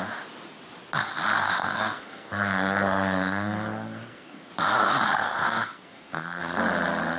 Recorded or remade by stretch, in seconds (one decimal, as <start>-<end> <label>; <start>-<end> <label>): 0.0-1.6 recorded; 1.6-4.5 remade; 4.5-5.2 recorded; 5.2-6.4 remade; 6.4-7.2 recorded